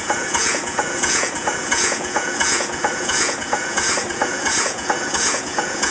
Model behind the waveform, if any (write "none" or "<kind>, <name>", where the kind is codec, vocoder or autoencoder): vocoder, Vocos